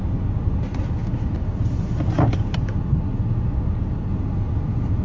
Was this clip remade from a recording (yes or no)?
no